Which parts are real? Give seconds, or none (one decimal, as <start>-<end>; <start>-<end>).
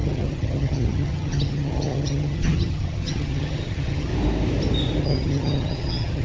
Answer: 4.1-5.0